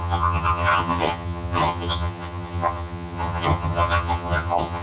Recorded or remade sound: remade